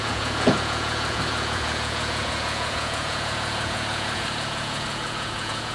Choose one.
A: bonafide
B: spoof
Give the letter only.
B